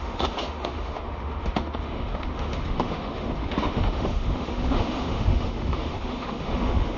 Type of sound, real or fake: fake